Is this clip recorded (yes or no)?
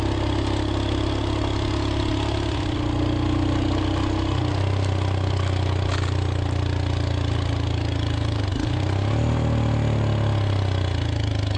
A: yes